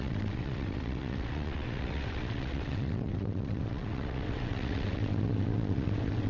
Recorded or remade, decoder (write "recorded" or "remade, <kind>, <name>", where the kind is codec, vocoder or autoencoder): remade, vocoder, WaveNeXt